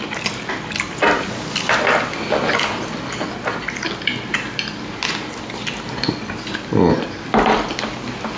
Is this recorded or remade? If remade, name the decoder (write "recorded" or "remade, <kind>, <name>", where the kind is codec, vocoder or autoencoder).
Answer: recorded